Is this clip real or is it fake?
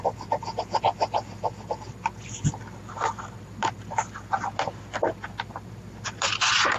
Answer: real